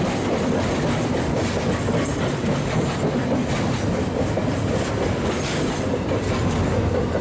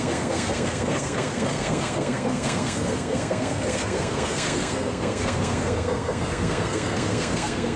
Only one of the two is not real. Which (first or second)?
second